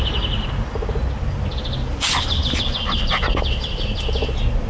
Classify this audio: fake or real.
real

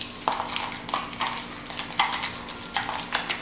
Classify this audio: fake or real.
real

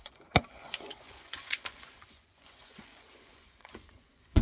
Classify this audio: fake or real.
fake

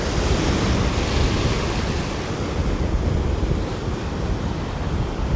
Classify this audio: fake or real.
real